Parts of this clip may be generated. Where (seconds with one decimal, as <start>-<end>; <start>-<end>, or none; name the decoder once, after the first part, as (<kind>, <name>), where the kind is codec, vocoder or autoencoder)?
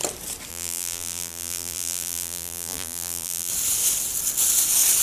0.5-3.5 (vocoder, BigVGAN v2)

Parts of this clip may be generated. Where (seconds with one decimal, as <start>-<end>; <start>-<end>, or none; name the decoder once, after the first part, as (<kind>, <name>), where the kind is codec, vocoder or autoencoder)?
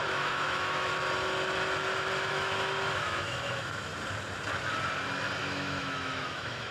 0.0-0.9 (autoencoder, DAC-VAE); 2.3-3.9; 5.4-6.7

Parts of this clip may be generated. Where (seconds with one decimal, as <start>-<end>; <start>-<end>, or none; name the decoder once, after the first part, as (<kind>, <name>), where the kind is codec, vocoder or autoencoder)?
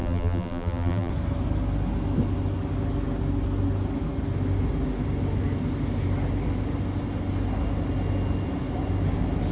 0.0-1.1 (vocoder, BigVGAN v2)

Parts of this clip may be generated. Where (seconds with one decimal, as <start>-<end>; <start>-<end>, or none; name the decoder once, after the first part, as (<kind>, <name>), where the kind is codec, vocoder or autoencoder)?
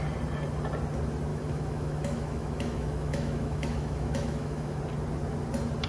1.3-4.8 (autoencoder, DAC-VAE)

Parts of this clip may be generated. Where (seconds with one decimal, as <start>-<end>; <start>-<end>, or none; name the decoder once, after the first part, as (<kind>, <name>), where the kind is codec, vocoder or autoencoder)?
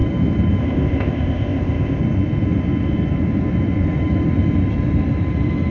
0.6-2.0 (codec, ZipCodec)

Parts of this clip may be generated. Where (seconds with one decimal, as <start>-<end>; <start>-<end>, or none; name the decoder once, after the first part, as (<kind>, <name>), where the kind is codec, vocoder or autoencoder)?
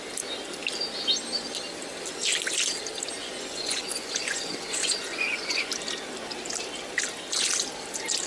3.2-5.7 (vocoder, Vocos)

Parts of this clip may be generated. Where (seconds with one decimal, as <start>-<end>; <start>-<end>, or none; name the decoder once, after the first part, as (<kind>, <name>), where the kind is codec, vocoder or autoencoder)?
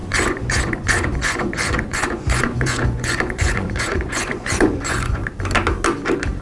0.0-5.2 (vocoder, Vocos)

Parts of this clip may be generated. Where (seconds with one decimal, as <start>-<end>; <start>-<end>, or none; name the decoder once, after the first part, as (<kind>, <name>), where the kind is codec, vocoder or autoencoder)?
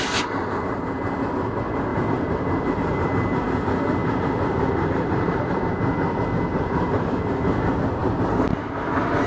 1.9-3.1 (vocoder, BigVGAN v2); 4.0-5.6; 6.5-7.2; 8.0-8.7